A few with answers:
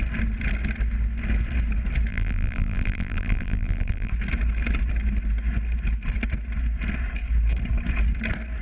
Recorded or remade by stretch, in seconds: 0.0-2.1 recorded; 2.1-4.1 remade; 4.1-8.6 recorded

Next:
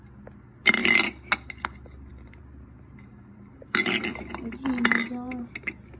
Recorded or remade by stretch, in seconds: 0.0-2.1 recorded; 2.1-4.3 remade; 4.3-6.0 recorded

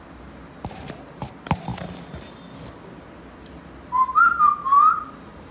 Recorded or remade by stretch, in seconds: 0.0-5.5 recorded

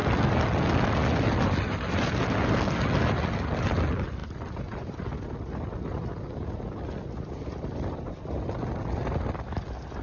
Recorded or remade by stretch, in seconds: 0.0-10.0 recorded

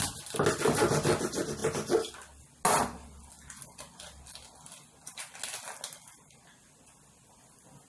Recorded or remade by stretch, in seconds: 0.0-7.9 recorded